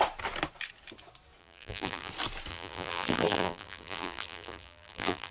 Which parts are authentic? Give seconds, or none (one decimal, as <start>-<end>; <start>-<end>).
0.0-1.4; 2.1-2.5